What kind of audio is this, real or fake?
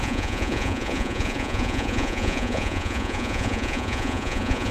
fake